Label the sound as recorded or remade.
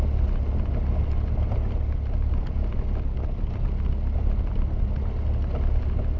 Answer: recorded